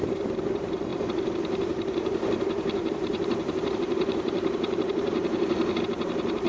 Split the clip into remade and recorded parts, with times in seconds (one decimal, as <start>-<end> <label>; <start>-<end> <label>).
0.0-6.5 remade

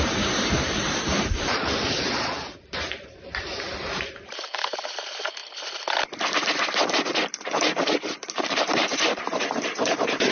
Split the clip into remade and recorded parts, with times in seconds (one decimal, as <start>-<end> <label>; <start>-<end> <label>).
0.0-5.4 remade; 5.4-6.9 recorded; 6.9-10.3 remade

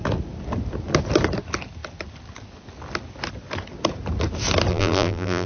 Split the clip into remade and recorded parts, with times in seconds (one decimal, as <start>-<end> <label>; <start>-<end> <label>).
0.0-4.7 recorded; 4.7-5.5 remade

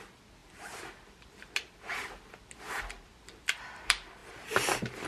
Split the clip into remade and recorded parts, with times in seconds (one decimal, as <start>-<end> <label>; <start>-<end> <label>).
0.0-5.1 recorded

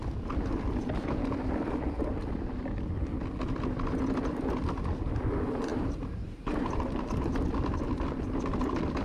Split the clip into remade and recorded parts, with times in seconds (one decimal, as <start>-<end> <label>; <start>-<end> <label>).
0.0-5.7 recorded; 5.7-6.8 remade; 6.8-9.0 recorded

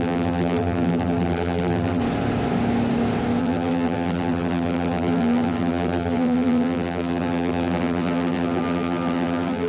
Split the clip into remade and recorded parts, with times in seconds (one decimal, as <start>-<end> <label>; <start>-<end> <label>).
0.0-2.0 remade; 2.0-3.4 recorded; 3.4-9.7 remade

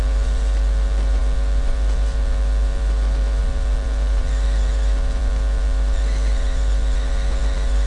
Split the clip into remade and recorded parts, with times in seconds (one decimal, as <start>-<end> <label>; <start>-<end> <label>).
0.0-7.9 remade